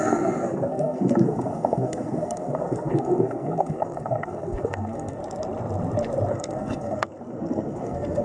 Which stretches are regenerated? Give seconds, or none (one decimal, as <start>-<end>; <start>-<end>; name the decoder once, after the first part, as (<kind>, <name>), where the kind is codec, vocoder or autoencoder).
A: 0.0-5.2 (codec, SNAC); 6.3-8.2